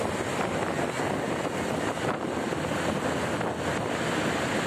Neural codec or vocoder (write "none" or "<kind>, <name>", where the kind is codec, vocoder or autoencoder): none